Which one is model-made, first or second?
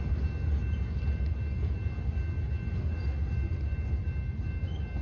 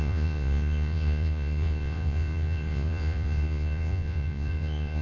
second